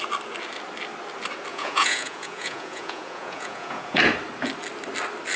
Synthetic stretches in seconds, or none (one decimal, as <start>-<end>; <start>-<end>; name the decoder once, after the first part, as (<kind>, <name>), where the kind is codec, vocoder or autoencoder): 1.5-4.0 (vocoder, Vocos)

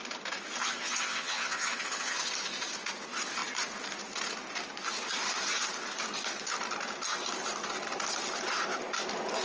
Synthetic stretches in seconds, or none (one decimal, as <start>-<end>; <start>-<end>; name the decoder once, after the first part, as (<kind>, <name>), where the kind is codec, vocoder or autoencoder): 0.6-2.3 (vocoder, HiFi-GAN)

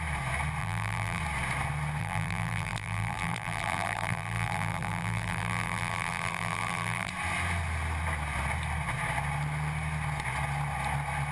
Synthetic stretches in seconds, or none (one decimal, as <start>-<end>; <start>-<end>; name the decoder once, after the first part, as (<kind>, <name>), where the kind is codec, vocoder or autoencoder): 0.6-1.2 (vocoder, BigVGAN v2); 2.0-7.1